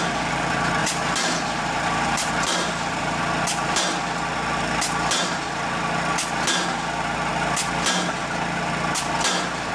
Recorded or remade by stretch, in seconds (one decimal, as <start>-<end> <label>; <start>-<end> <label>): 0.0-0.8 recorded; 0.8-3.2 remade; 3.2-9.7 recorded

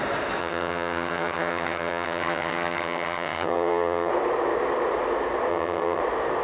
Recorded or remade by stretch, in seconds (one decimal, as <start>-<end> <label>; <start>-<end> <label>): 0.0-0.4 recorded; 0.4-4.1 remade; 4.1-5.5 recorded; 5.5-6.0 remade; 6.0-6.4 recorded

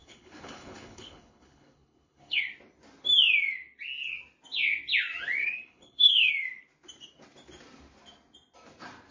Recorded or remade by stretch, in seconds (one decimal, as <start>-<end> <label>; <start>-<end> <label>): 0.0-2.5 remade; 2.5-5.4 recorded; 5.4-6.3 remade; 6.3-9.1 recorded